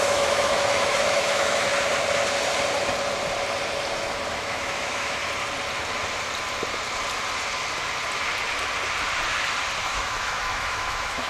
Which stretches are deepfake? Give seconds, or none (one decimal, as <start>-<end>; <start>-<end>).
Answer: 0.0-1.7; 4.3-5.2; 9.8-11.3